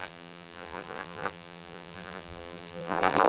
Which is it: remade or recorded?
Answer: remade